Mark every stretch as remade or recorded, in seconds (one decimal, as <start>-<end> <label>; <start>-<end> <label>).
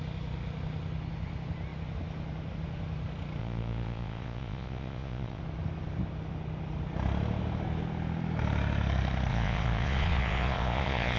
0.0-3.4 recorded; 3.4-5.4 remade; 5.4-9.3 recorded; 9.3-11.2 remade